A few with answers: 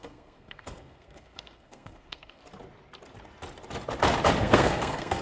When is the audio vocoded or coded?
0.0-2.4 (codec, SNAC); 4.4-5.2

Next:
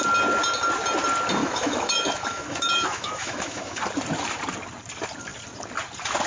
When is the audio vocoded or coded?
1.4-3.8 (autoencoder, DAC-VAE)

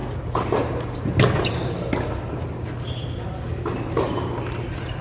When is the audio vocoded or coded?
none

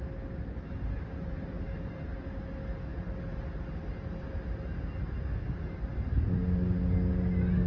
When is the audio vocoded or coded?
0.5-2.3 (vocoder, BigVGAN v2)

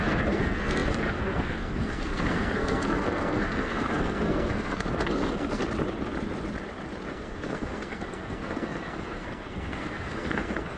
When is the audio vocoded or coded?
0.0-5.6 (codec, SNAC); 7.1-10.8